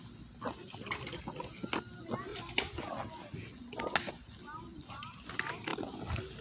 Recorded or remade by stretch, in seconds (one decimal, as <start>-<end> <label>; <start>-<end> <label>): 0.0-0.6 recorded; 0.6-1.2 remade; 1.2-4.7 recorded; 4.7-5.3 remade; 5.3-6.4 recorded

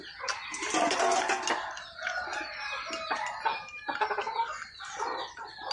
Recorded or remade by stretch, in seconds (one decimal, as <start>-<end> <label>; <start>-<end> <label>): 0.0-5.7 recorded

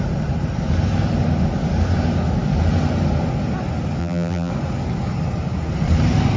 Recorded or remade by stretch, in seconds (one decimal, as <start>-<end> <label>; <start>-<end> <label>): 0.0-4.0 recorded; 4.0-4.5 remade; 4.5-6.4 recorded

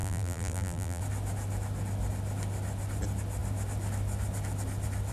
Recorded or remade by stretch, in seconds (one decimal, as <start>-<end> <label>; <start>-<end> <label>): 0.0-1.0 remade; 1.0-5.1 recorded